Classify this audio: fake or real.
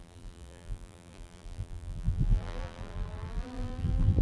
fake